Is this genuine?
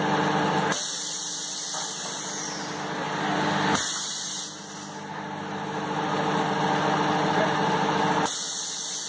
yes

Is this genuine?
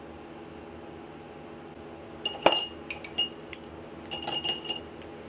yes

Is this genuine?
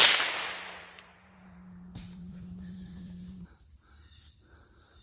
no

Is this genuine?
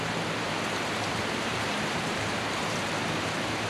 no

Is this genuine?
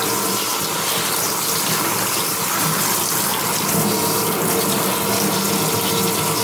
yes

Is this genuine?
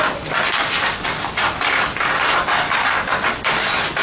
yes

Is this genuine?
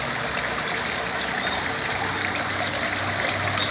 no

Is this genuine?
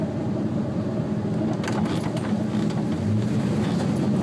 yes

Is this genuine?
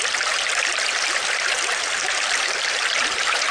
no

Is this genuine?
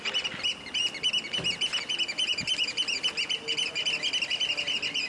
yes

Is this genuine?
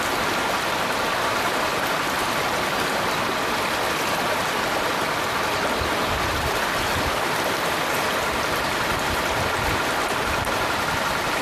yes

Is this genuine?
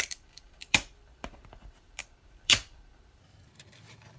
no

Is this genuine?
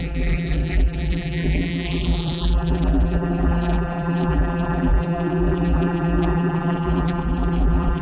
no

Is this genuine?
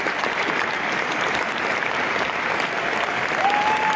no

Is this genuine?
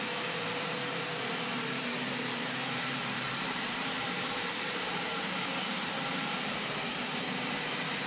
no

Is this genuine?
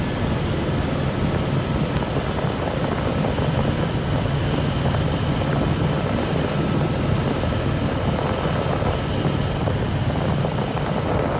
yes